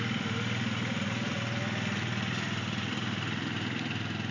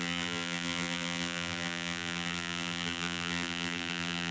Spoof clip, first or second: second